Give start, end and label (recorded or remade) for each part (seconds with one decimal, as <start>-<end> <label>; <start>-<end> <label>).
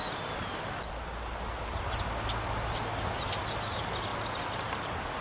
0.0-5.2 recorded